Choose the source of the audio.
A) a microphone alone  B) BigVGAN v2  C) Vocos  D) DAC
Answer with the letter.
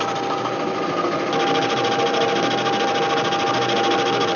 A